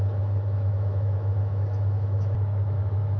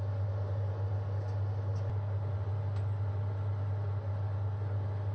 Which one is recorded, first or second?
second